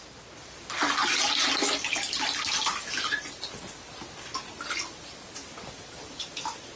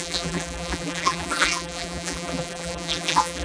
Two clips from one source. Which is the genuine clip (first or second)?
first